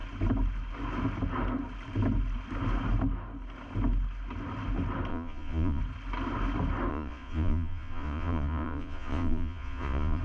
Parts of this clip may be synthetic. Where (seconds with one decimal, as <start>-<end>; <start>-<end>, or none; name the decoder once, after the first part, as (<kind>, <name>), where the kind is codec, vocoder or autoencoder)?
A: 5.1-5.8 (vocoder, Vocos); 6.9-10.2